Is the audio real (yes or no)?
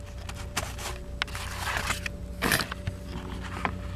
yes